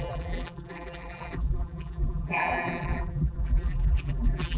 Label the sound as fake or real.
fake